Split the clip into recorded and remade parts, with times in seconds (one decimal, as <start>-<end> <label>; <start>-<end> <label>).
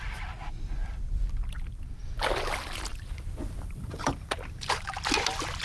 0.0-5.6 recorded